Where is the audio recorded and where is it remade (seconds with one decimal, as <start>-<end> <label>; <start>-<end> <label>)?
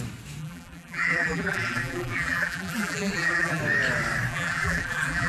0.0-0.4 recorded; 0.4-3.6 remade; 3.6-4.3 recorded; 4.3-5.3 remade